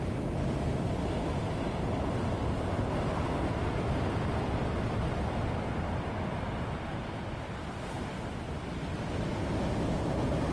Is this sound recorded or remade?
recorded